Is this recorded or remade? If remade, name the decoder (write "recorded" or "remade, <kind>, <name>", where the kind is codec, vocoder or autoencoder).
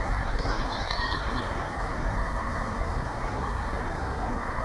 remade, codec, SNAC